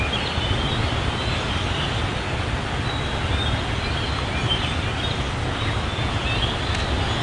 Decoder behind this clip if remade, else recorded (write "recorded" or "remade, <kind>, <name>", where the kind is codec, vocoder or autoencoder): recorded